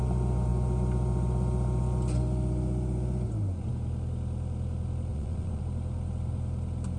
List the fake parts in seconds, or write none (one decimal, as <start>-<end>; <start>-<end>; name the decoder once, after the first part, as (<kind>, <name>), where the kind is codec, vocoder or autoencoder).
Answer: 5.1-5.6 (vocoder, Vocos)